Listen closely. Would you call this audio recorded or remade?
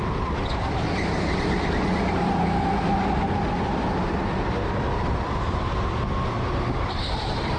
recorded